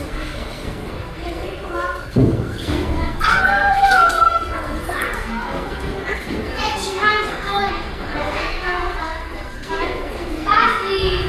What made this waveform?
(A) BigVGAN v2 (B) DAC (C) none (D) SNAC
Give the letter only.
D